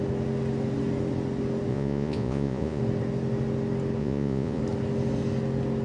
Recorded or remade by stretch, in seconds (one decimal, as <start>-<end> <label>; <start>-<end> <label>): 0.0-1.7 recorded; 1.7-2.8 remade; 2.8-4.0 recorded; 4.0-4.6 remade; 4.6-5.8 recorded

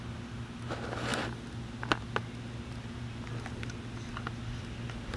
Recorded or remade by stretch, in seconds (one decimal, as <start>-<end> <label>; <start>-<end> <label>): 0.0-5.2 recorded